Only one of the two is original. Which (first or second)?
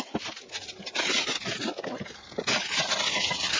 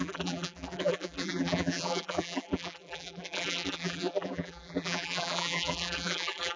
first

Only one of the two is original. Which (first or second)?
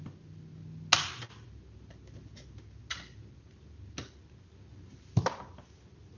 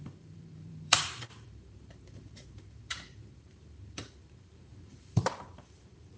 first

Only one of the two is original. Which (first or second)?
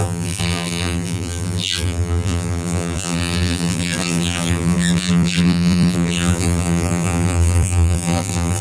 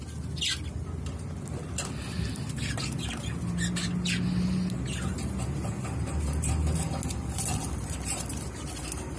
second